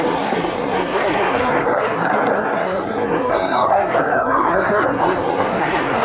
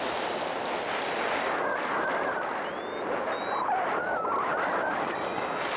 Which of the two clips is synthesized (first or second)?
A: first